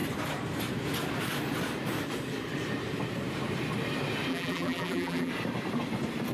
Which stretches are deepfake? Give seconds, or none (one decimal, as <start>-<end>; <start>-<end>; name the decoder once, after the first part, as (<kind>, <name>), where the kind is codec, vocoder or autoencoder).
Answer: 4.3-5.3 (vocoder, BigVGAN v2)